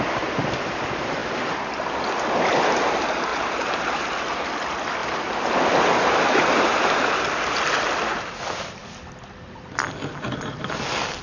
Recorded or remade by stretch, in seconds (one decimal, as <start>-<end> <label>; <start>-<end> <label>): 0.0-3.3 recorded; 3.3-3.9 remade; 3.9-5.0 recorded; 5.0-5.6 remade; 5.6-11.2 recorded